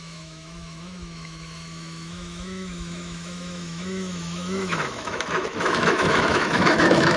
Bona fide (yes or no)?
no